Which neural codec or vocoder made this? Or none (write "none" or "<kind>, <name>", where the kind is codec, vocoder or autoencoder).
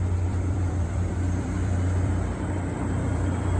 vocoder, BigVGAN v2